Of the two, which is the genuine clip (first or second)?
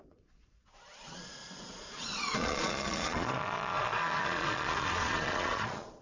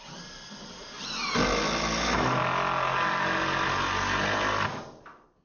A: second